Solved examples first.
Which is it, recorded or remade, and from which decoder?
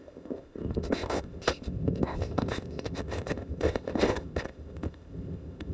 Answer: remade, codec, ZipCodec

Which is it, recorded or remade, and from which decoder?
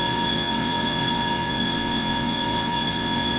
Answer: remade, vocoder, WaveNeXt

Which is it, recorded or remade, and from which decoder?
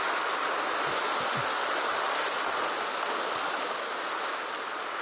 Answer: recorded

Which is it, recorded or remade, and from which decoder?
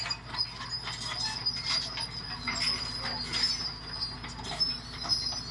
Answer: recorded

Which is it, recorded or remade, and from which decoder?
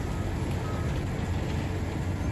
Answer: recorded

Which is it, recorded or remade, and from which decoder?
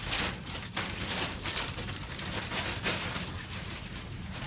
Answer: remade, vocoder, BigVGAN v2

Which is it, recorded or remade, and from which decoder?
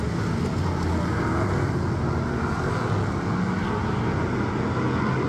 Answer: recorded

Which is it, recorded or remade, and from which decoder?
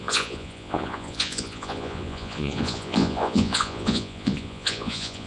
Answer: remade, vocoder, Vocos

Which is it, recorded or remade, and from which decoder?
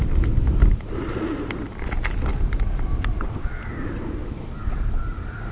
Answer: recorded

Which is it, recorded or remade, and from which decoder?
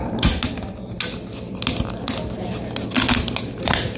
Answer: recorded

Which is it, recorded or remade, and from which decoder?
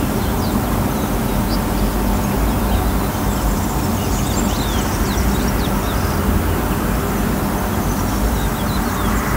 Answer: recorded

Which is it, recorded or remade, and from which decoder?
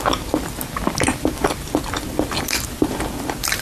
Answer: recorded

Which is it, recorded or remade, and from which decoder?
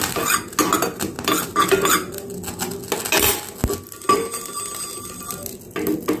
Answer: recorded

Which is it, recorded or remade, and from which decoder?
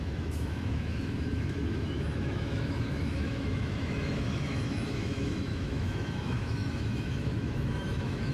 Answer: remade, autoencoder, DAC-VAE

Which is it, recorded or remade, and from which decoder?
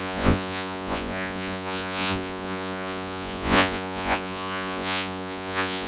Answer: remade, vocoder, Vocos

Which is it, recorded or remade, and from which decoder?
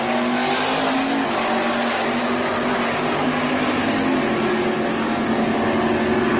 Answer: recorded